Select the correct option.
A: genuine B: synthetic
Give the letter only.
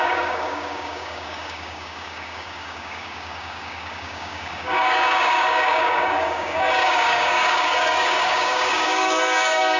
B